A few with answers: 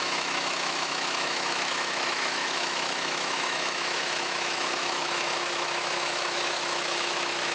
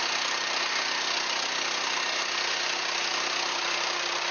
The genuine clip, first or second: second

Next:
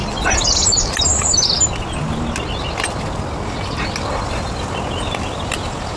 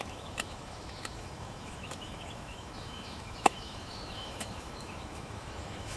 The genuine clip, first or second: first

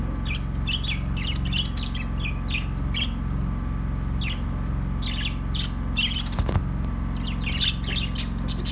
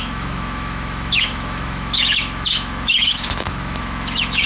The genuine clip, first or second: first